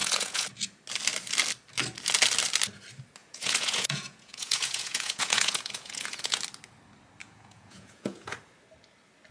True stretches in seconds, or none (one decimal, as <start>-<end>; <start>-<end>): 0.5-3.2; 6.4-7.2; 8.4-9.3